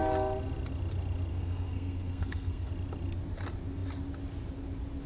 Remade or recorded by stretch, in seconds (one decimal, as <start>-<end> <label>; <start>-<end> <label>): 0.0-1.3 recorded; 1.3-2.7 remade; 2.7-5.1 recorded